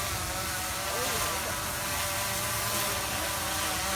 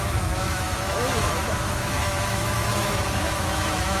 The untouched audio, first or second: first